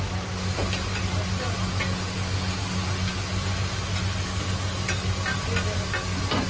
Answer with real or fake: real